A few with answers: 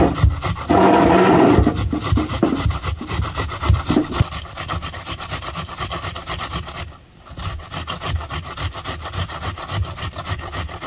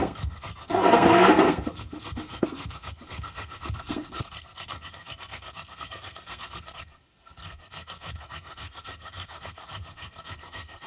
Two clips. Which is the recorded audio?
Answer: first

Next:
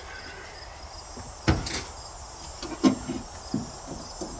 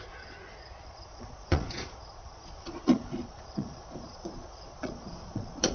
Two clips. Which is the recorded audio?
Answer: first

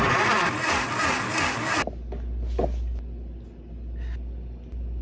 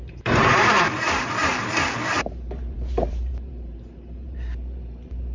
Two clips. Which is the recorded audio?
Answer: first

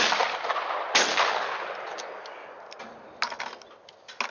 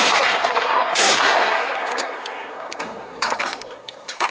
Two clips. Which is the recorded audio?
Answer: first